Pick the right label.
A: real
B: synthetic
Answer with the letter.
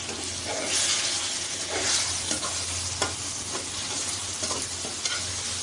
A